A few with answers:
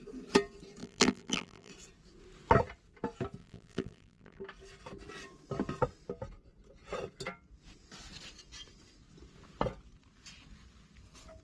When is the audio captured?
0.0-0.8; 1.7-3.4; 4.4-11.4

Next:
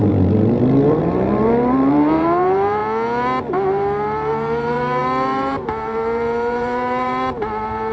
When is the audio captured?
2.8-3.5

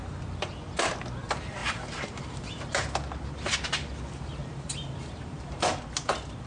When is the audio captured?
0.0-1.6; 2.9-4.4; 5.8-6.5

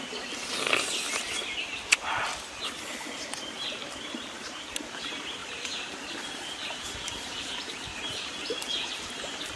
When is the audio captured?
0.0-3.8; 4.7-5.4; 9.1-9.6

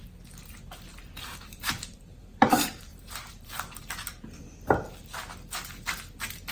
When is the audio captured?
0.0-1.3; 3.8-6.5

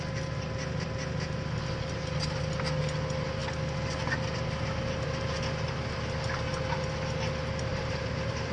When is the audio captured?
0.0-7.7

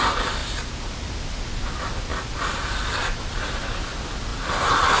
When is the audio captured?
0.0-2.1; 3.0-4.3

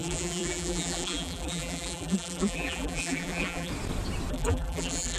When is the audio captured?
3.7-4.3